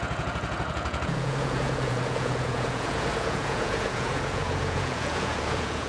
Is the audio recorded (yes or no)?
no